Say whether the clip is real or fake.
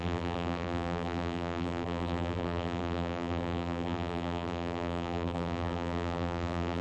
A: fake